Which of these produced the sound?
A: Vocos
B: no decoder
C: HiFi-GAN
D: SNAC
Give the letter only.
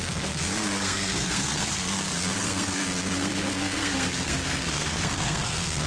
D